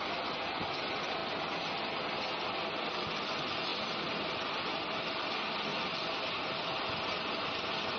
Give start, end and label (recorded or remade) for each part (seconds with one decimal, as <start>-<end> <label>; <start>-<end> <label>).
0.0-8.0 recorded